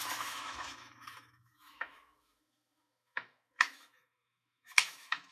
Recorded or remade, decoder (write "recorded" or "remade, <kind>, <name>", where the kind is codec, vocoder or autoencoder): remade, autoencoder, DAC-VAE